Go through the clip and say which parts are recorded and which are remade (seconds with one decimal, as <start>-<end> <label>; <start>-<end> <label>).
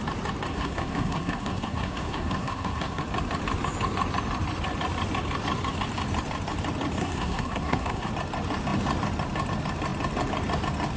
0.0-0.5 recorded; 0.5-3.0 remade; 3.0-7.0 recorded; 7.0-8.1 remade; 8.1-11.0 recorded